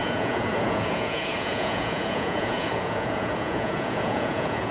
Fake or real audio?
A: fake